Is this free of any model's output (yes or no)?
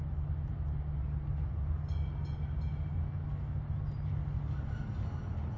yes